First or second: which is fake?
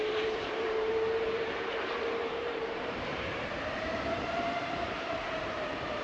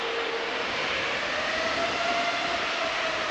first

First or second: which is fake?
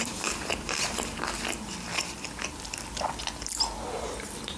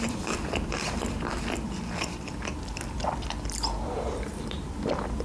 second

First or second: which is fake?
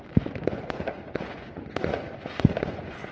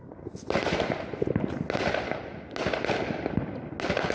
first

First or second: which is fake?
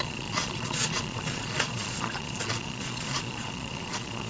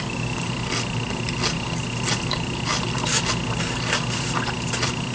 first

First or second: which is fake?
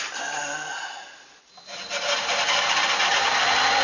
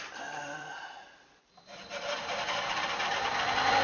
second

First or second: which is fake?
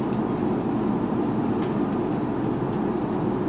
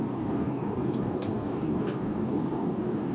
second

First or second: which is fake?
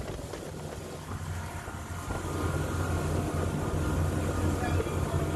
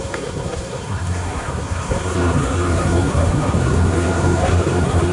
second